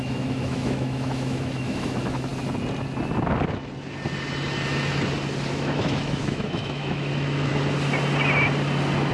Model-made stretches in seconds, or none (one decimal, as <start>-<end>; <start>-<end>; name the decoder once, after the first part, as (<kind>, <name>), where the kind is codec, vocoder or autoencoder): 0.0-2.3 (autoencoder, DAC-VAE); 5.5-7.5